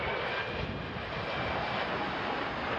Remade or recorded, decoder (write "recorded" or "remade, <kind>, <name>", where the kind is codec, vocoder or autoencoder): recorded